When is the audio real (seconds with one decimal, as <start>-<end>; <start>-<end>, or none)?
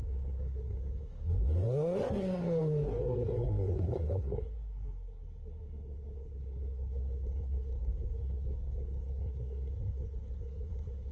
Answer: none